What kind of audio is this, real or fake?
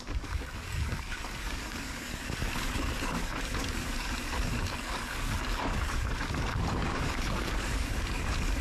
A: fake